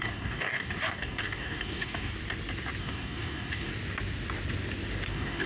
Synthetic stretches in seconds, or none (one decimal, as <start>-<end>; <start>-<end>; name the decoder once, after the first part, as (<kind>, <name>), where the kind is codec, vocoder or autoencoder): 0.0-2.1 (codec, DAC); 2.8-3.7; 5.1-5.5